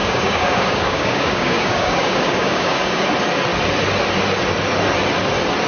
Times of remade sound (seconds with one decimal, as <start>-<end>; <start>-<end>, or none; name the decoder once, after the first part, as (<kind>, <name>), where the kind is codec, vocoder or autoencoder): 0.0-3.1 (codec, DAC)